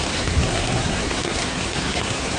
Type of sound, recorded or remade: remade